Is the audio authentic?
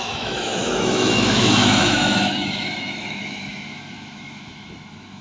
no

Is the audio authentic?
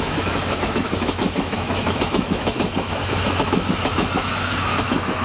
no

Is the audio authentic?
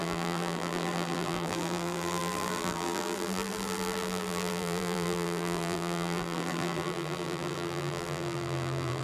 no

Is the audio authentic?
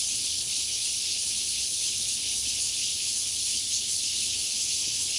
no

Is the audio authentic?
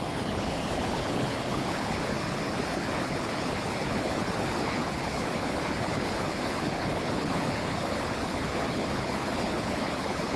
no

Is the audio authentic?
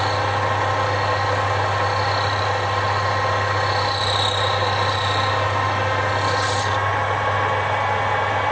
yes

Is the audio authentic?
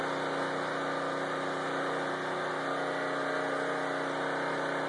yes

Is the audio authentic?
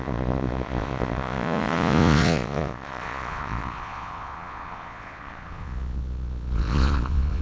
no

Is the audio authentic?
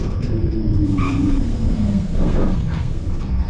no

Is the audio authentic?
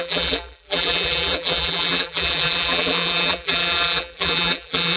no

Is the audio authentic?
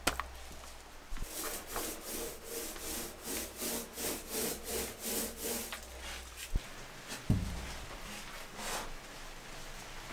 yes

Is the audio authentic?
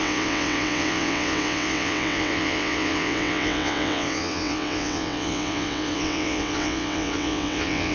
no